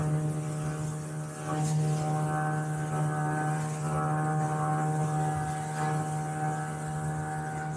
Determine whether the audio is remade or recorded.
recorded